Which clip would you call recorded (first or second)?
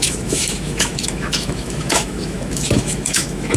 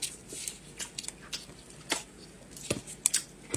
second